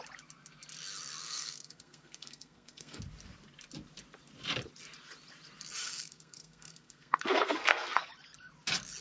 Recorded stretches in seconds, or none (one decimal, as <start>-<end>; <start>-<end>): 0.0-1.2; 3.0-5.8; 8.1-9.0